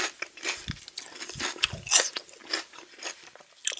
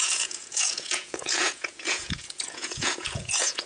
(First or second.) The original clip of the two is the first